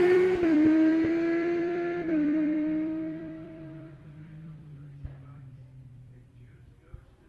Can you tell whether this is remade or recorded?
remade